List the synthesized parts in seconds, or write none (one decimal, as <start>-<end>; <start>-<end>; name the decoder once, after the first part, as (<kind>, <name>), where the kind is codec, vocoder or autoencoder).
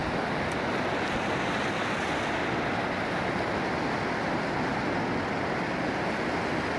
none